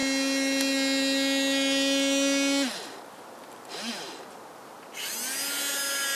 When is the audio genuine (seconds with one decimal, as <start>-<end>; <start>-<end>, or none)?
0.0-6.2